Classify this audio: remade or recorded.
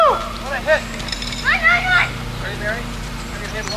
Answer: remade